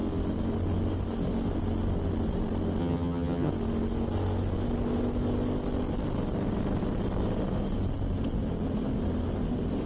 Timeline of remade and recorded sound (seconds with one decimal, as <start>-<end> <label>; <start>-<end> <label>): 0.0-2.8 recorded; 2.8-3.5 remade; 3.5-9.9 recorded